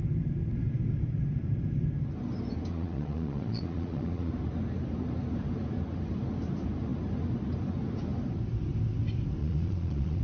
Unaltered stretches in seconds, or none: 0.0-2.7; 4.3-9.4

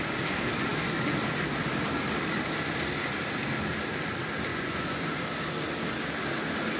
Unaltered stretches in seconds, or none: 0.0-4.5; 5.0-6.8

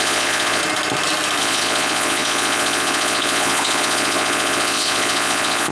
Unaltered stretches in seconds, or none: 0.6-1.4

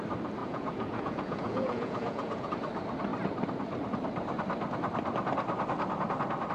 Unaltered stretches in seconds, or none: 0.0-0.4; 2.5-6.5

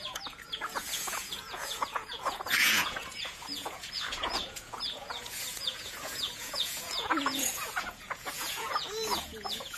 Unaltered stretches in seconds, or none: none